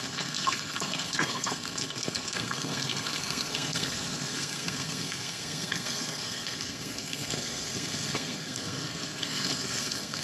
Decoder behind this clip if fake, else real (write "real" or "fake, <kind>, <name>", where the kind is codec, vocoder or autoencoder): fake, codec, SNAC